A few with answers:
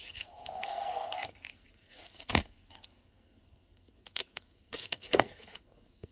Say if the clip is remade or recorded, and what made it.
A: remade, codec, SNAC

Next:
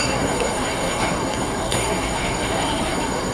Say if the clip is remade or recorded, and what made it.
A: remade, codec, SNAC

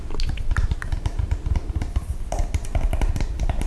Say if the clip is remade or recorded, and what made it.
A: recorded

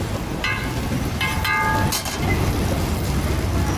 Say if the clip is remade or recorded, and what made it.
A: recorded